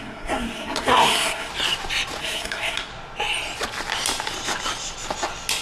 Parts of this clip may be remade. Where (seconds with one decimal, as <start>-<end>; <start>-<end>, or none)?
0.0-1.5; 2.2-2.9